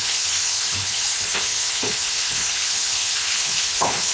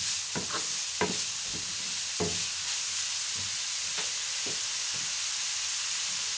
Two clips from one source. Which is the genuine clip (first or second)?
second